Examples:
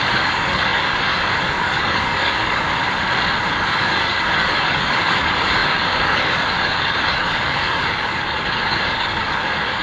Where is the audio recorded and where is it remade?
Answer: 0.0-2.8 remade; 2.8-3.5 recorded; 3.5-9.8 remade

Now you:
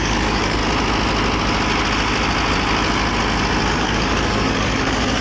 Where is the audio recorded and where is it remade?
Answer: 0.0-0.6 remade; 0.6-3.7 recorded; 3.7-5.2 remade